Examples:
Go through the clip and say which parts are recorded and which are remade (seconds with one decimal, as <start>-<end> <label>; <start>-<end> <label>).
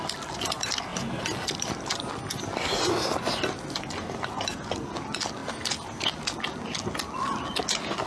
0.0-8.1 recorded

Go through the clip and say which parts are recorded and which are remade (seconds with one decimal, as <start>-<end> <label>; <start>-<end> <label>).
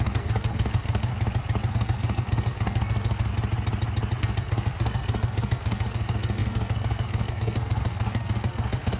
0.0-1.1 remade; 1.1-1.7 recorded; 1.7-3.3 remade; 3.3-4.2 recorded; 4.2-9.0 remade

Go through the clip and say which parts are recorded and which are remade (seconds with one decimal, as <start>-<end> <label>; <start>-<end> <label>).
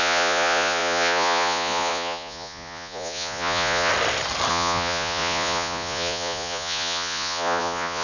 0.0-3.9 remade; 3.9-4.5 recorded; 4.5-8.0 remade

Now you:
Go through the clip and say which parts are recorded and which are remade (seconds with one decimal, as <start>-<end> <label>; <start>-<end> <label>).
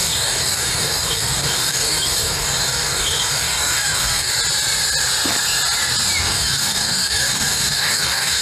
0.0-4.3 remade; 4.3-6.2 recorded; 6.2-8.4 remade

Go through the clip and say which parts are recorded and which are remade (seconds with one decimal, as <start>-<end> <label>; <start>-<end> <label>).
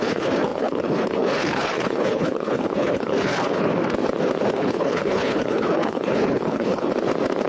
0.0-3.7 remade; 3.7-4.5 recorded; 4.5-6.9 remade; 6.9-7.5 recorded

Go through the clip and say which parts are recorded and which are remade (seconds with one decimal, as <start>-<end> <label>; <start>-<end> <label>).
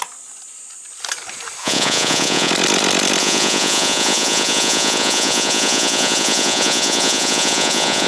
0.0-1.6 recorded; 1.6-2.5 remade; 2.5-3.2 recorded; 3.2-8.1 remade